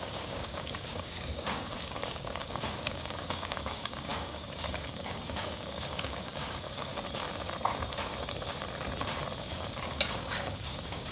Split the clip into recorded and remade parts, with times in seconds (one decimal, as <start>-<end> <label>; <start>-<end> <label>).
0.0-6.9 remade; 6.9-9.4 recorded; 9.4-11.1 remade